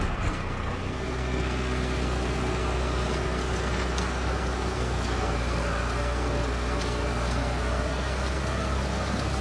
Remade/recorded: remade